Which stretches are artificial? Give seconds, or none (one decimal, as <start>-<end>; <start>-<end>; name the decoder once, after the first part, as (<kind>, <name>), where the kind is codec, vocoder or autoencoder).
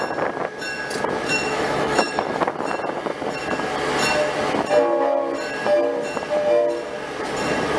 1.3-2.4 (autoencoder, DAC-VAE)